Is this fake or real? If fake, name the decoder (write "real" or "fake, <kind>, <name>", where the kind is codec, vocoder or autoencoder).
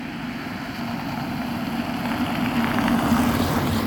real